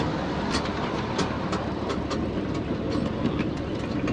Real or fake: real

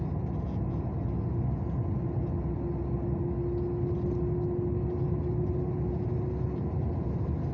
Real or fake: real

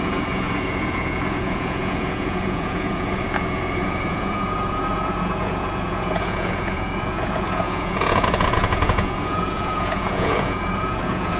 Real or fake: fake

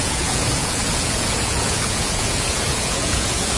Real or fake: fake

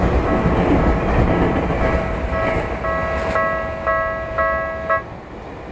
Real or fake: real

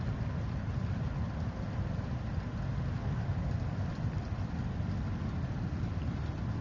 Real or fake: real